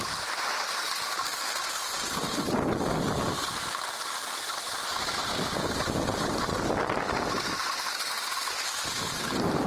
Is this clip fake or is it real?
real